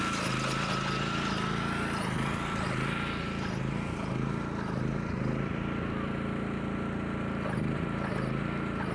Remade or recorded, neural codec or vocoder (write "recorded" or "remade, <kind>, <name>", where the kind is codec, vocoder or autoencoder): recorded